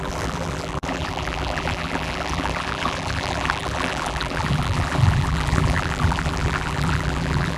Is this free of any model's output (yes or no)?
no